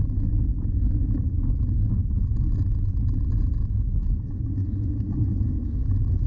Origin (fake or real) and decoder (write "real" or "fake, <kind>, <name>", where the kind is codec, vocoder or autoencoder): real